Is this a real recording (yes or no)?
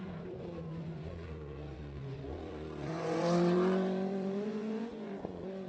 no